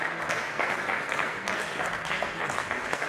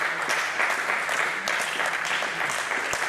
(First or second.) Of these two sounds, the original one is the second